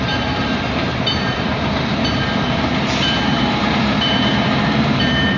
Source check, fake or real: fake